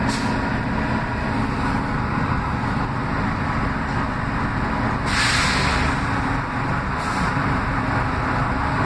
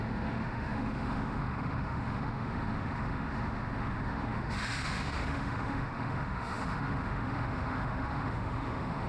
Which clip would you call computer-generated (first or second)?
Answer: second